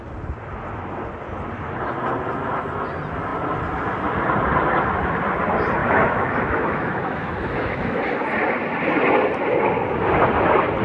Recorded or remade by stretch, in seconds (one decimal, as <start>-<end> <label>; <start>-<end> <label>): 0.0-5.8 recorded; 5.8-8.0 remade; 8.0-10.8 recorded